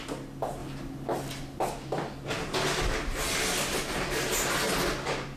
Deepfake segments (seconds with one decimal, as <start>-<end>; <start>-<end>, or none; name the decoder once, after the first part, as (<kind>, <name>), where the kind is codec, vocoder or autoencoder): none